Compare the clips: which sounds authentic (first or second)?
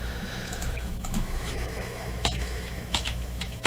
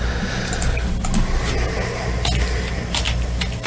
second